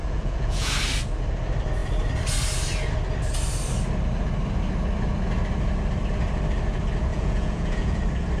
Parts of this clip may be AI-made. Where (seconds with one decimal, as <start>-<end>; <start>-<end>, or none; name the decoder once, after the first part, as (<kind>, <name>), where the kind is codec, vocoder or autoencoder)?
0.0-0.7 (vocoder, Vocos); 7.1-8.0